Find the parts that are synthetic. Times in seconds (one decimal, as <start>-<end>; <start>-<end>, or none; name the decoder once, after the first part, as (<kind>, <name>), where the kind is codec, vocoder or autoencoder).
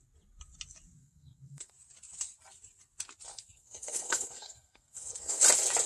1.0-1.7 (codec, SNAC); 3.3-5.4